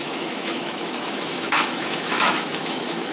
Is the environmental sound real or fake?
fake